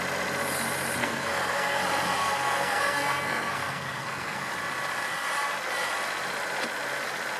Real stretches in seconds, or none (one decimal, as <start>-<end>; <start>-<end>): 0.0-1.0; 1.8-2.2; 4.5-7.4